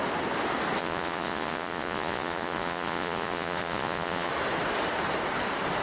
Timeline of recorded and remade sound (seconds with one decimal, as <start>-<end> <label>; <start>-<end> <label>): 0.0-0.8 recorded; 0.8-4.3 remade; 4.3-5.8 recorded